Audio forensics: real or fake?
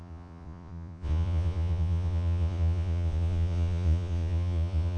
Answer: fake